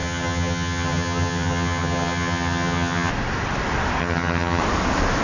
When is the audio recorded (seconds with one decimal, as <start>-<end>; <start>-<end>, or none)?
3.1-4.0; 4.6-5.2

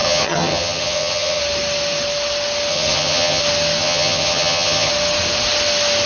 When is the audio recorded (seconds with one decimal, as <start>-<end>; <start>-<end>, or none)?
1.4-2.7; 3.4-3.8; 4.9-6.1